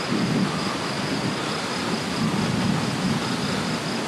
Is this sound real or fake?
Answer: real